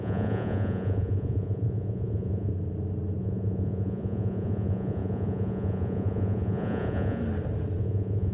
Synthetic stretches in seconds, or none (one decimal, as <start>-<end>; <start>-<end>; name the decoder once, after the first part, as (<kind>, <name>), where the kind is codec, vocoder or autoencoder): 0.0-2.5 (vocoder, Vocos); 3.2-7.2; 7.8-8.3